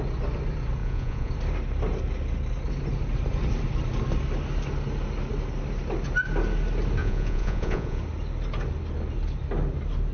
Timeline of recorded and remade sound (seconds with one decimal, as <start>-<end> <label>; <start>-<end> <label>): 0.0-0.8 recorded; 0.8-1.3 remade; 1.3-7.0 recorded; 7.0-8.0 remade; 8.0-10.1 recorded